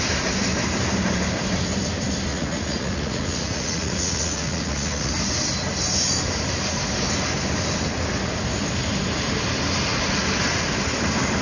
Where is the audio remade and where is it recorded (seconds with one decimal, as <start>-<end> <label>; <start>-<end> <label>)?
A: 0.0-2.3 recorded; 2.3-5.1 remade; 5.1-11.4 recorded